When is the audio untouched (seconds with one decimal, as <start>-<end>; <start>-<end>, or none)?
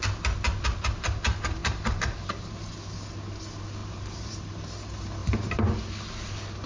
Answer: 0.0-1.6; 2.6-3.8; 4.3-5.2; 5.9-6.7